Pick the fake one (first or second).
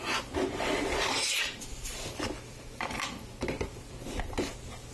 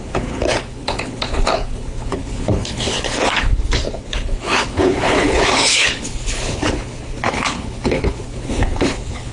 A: second